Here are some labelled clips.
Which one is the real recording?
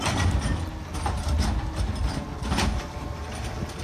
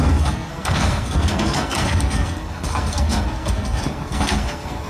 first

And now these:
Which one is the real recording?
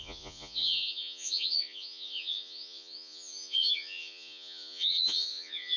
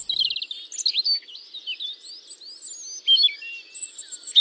second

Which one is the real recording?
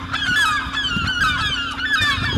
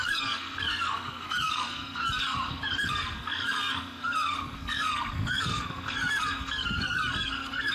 first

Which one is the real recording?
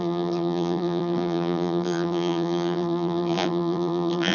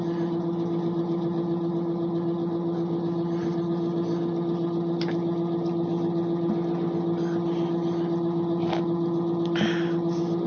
second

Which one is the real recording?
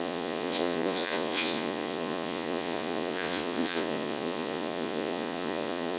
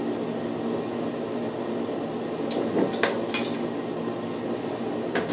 second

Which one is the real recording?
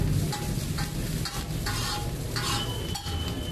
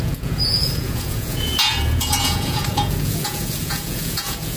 first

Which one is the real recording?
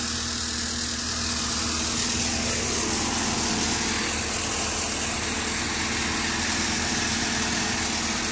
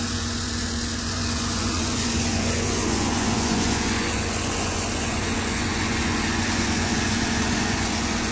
first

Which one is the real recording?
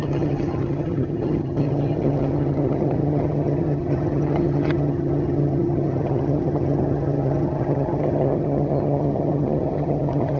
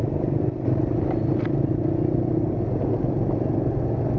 second